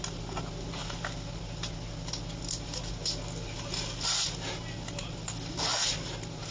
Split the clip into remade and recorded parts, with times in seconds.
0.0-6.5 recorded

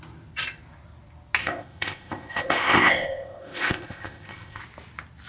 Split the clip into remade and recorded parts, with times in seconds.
0.0-1.4 recorded; 1.4-4.6 remade; 4.6-5.3 recorded

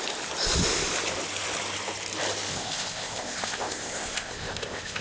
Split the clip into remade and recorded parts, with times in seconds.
0.0-2.5 recorded; 2.5-5.0 remade

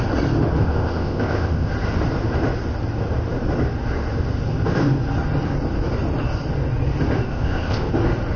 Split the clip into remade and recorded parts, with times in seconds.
0.0-0.6 recorded; 0.6-1.7 remade; 1.7-7.3 recorded; 7.3-7.9 remade; 7.9-8.4 recorded

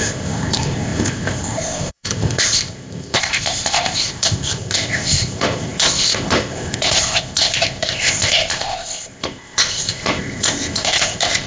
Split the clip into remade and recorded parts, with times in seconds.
0.0-11.5 remade

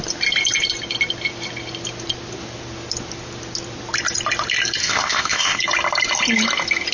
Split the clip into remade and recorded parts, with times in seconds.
0.0-4.8 recorded; 4.8-5.6 remade; 5.6-6.9 recorded